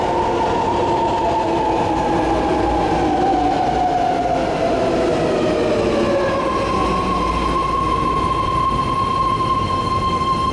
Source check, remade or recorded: recorded